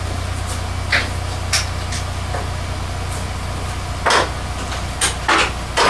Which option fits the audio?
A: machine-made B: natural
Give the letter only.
B